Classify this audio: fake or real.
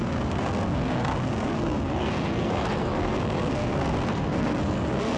fake